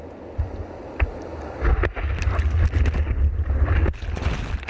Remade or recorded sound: recorded